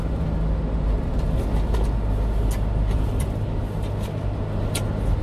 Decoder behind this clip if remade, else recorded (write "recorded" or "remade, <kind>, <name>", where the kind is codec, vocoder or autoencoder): recorded